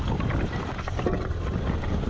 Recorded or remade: recorded